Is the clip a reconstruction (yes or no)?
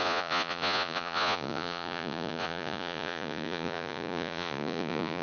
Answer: yes